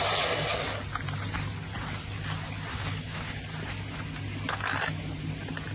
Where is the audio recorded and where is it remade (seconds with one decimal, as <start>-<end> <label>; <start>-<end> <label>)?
0.0-2.7 recorded; 2.7-3.4 remade; 3.4-5.7 recorded